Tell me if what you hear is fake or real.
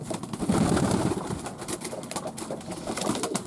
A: real